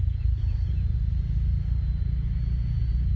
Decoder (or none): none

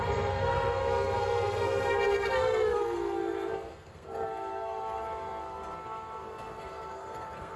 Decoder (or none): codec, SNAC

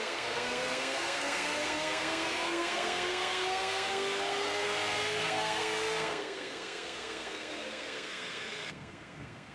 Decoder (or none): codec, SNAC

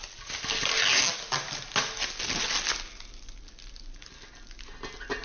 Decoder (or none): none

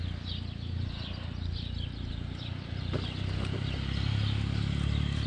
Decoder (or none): none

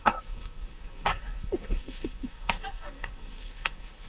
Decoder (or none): codec, SNAC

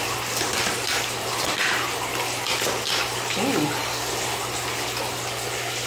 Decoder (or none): none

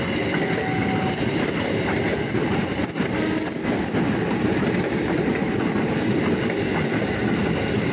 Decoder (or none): none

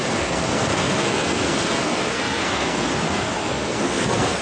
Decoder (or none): codec, SNAC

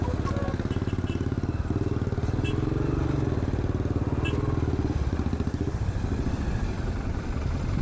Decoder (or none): none